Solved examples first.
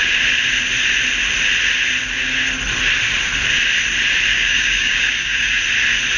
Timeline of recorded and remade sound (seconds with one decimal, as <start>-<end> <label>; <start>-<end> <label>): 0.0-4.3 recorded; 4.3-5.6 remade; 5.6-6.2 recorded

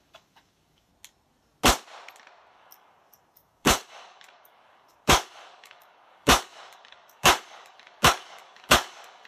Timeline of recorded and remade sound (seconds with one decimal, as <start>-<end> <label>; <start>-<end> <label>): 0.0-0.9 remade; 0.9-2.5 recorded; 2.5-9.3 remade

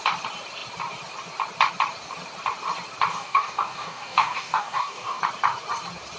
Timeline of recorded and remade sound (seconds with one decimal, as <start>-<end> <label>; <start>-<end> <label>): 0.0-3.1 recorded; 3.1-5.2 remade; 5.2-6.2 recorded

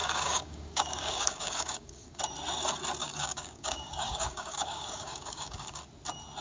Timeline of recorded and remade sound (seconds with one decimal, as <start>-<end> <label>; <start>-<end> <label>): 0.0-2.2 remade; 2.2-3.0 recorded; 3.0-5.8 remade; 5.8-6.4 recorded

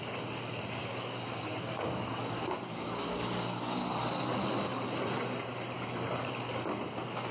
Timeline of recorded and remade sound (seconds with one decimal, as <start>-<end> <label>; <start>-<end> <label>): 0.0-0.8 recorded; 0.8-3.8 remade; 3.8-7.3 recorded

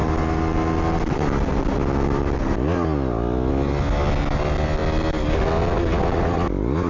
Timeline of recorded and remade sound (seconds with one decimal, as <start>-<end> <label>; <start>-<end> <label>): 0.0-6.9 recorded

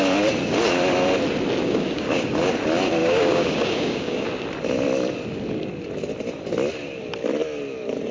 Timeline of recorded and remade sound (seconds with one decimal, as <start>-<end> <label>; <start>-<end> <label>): 0.0-1.6 recorded; 1.6-2.5 remade; 2.5-3.0 recorded; 3.0-4.3 remade; 4.3-8.1 recorded

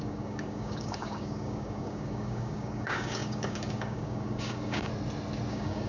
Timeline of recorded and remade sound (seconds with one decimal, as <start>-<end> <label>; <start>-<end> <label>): 0.0-4.9 remade; 4.9-5.5 recorded; 5.5-5.9 remade